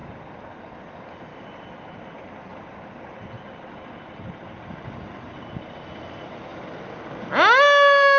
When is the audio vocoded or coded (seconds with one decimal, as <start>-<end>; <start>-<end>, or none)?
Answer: 1.3-5.4

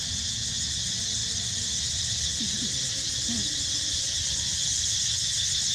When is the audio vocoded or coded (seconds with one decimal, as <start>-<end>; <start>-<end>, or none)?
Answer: 0.0-0.7

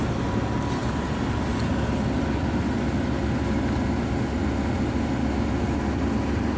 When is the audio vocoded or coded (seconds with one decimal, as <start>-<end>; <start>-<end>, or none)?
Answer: none

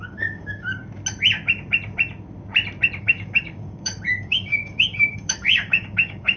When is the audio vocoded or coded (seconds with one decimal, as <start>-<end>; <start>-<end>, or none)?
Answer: 0.0-0.8; 3.0-6.4

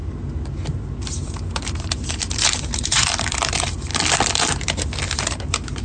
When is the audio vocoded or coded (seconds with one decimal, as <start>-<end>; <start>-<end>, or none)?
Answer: 1.0-3.9; 5.3-5.8

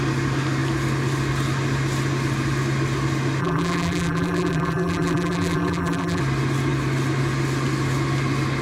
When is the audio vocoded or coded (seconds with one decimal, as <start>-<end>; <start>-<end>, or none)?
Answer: 3.4-6.2